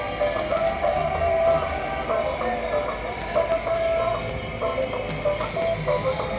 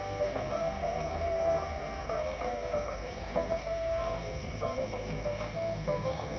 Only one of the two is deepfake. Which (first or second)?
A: second